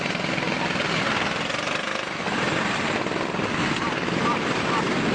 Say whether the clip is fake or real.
real